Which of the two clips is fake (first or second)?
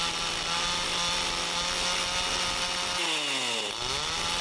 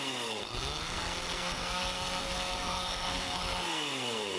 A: second